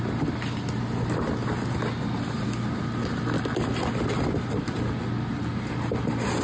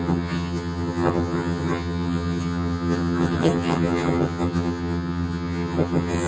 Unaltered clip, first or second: first